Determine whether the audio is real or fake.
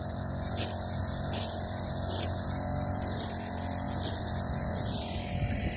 fake